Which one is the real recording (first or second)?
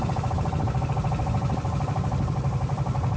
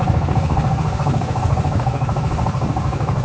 first